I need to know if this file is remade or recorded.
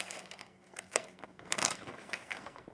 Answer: remade